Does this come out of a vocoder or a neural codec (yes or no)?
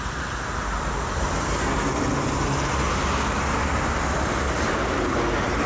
no